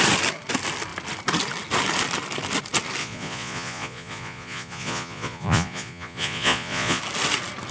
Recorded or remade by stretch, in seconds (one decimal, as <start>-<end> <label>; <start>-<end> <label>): 0.0-3.0 recorded; 3.0-7.0 remade; 7.0-7.7 recorded